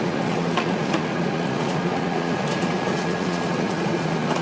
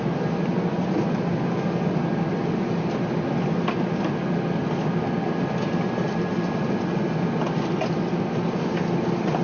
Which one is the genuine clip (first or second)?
second